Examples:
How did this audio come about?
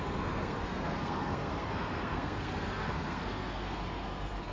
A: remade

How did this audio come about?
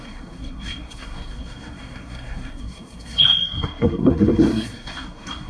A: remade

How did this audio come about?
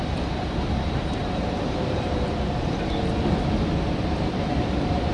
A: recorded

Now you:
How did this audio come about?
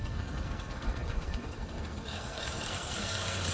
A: remade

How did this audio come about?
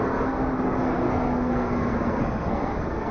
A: remade